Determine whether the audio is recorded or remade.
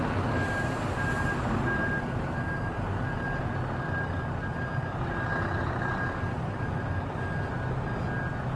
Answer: recorded